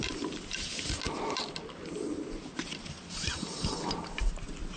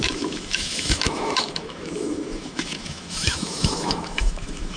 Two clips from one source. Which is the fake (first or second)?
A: second